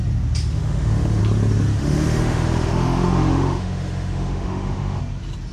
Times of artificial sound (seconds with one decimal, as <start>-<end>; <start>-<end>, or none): 0.5-1.2; 1.7-5.0

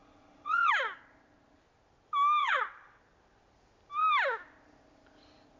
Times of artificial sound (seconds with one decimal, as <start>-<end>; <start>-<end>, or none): 0.0-0.7; 2.4-3.0

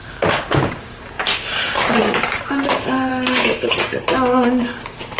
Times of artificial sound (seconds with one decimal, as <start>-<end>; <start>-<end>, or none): 0.0-5.2

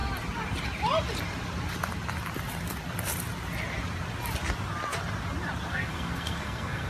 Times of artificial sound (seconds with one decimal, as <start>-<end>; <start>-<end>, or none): 5.7-6.9

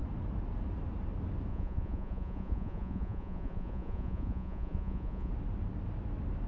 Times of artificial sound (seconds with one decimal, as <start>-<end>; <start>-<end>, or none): 1.5-5.3

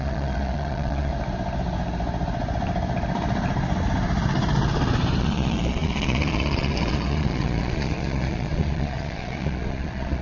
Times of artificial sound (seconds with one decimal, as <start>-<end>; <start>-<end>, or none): 0.0-1.1; 5.2-10.2